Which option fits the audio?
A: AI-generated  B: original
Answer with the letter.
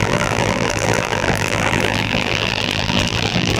A